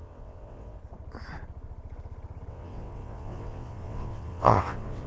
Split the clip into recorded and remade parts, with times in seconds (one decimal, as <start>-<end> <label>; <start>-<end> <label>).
0.0-0.8 remade; 0.8-2.5 recorded; 2.5-5.1 remade